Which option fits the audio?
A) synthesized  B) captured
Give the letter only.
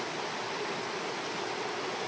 B